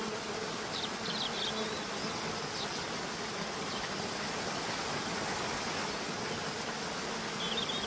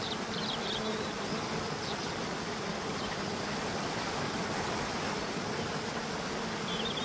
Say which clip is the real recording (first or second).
first